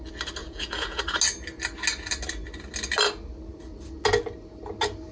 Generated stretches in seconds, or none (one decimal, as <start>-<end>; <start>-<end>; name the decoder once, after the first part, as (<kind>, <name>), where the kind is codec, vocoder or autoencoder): 0.4-1.0 (vocoder, Vocos)